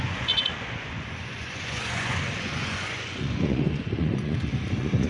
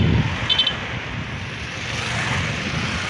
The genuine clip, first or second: second